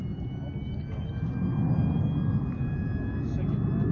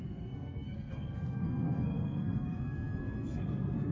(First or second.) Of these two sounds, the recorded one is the first